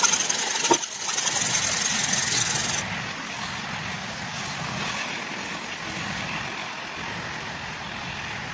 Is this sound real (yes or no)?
yes